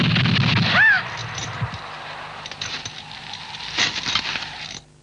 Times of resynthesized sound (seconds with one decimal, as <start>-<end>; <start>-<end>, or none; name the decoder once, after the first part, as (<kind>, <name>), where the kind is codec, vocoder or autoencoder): none